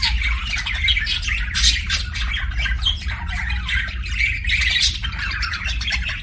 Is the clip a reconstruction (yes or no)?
no